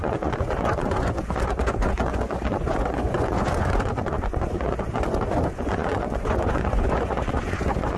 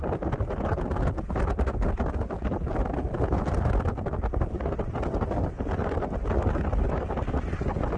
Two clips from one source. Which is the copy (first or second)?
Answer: first